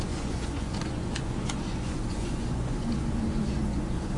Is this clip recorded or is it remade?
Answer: remade